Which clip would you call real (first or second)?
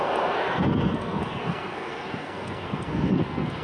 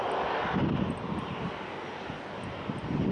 second